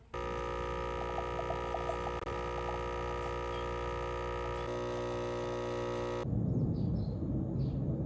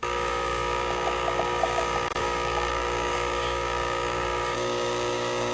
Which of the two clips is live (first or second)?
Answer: first